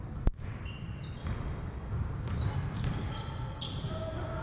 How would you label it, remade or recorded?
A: recorded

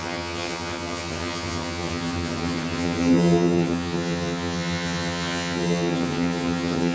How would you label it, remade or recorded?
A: remade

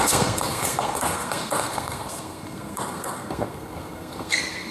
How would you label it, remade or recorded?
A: remade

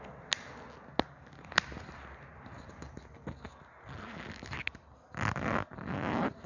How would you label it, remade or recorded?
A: recorded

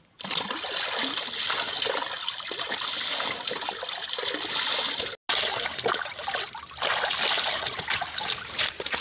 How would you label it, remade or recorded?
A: recorded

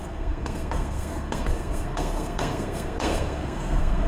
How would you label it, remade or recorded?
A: remade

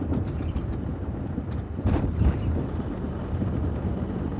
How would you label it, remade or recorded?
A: remade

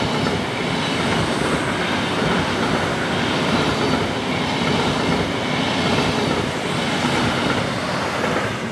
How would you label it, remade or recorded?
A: recorded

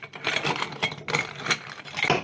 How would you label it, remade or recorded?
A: recorded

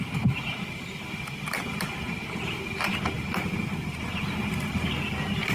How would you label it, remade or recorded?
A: recorded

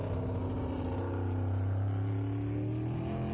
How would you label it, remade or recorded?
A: recorded